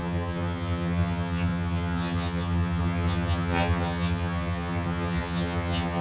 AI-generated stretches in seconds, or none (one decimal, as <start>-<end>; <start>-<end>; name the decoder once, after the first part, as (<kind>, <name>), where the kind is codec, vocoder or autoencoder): 0.0-6.0 (vocoder, HiFi-GAN)